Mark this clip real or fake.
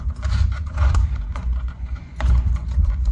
fake